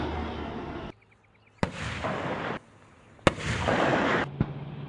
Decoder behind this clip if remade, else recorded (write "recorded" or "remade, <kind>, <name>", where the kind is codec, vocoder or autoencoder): recorded